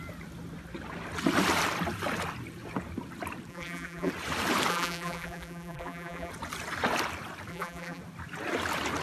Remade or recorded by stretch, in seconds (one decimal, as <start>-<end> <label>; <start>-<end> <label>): 0.0-3.5 recorded; 3.5-4.1 remade; 4.1-4.7 recorded; 4.7-6.3 remade; 6.3-7.5 recorded; 7.5-8.0 remade; 8.0-9.0 recorded